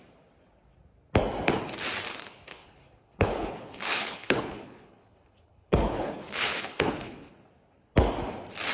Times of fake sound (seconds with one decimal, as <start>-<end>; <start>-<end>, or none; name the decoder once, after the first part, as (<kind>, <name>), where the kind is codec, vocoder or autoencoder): 2.1-7.3 (codec, HILCodec)